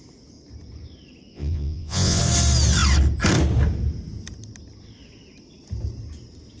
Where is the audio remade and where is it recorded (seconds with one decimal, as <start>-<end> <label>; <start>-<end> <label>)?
0.0-1.3 recorded; 1.3-2.2 remade; 2.2-6.6 recorded